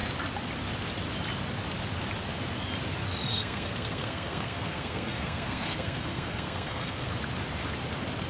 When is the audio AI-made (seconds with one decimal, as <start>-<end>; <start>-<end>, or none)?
3.3-7.1